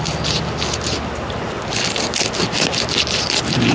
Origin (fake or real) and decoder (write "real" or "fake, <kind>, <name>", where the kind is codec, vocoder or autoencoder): real